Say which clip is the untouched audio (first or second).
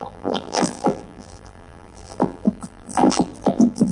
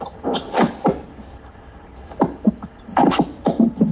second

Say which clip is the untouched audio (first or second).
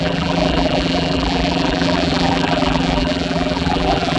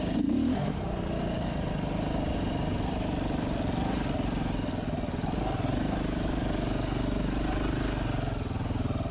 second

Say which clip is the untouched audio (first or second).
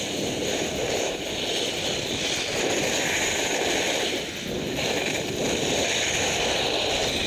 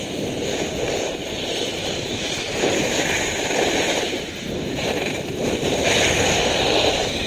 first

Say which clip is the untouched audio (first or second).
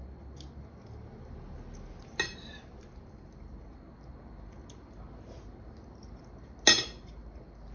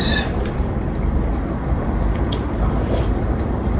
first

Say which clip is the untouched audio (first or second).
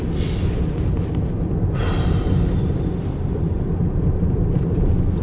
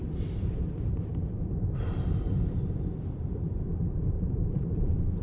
first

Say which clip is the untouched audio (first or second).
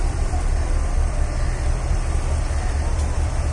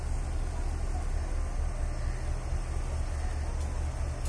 second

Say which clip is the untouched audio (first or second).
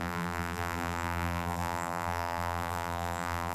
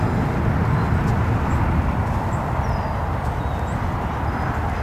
second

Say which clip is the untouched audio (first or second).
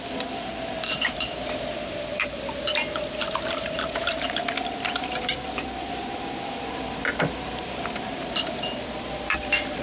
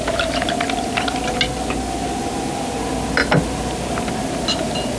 second